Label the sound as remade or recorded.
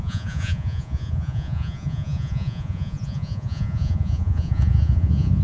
remade